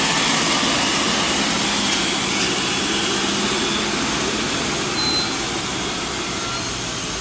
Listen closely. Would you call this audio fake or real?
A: real